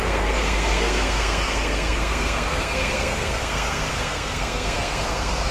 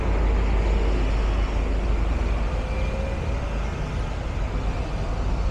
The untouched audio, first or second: second